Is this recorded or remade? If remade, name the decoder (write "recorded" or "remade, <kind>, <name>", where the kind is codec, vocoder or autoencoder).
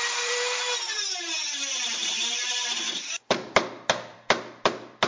remade, vocoder, BigVGAN v2